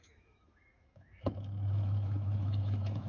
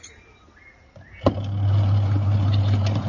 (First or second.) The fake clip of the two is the first